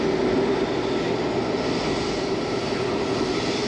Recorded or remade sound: recorded